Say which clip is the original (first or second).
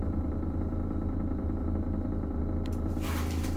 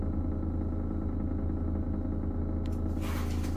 second